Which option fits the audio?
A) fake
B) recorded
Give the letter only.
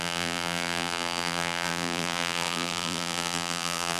A